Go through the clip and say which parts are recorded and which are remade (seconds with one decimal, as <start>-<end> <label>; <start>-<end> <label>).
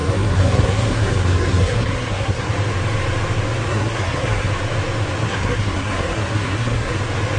0.0-2.5 remade; 2.5-3.7 recorded; 3.7-4.5 remade; 4.5-5.2 recorded; 5.2-7.0 remade; 7.0-7.4 recorded